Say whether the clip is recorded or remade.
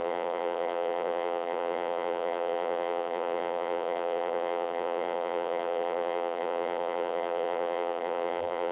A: remade